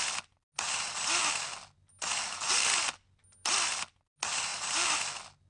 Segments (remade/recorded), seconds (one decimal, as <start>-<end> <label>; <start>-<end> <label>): 0.0-4.5 recorded; 4.5-5.1 remade; 5.1-5.5 recorded